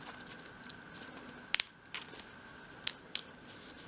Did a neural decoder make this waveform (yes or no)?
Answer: no